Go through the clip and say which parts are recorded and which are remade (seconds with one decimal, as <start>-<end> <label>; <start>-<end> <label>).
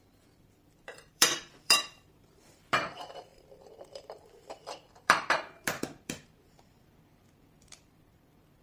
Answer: 0.0-8.6 remade